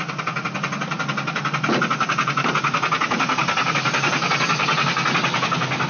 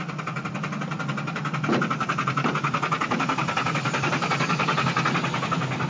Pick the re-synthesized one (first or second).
second